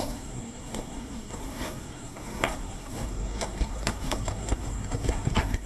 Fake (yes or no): yes